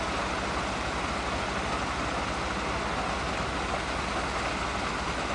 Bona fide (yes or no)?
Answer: yes